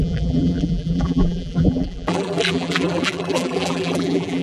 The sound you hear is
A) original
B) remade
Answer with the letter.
B